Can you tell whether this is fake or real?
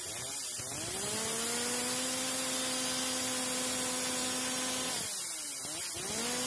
real